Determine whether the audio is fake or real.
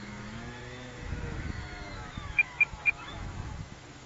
fake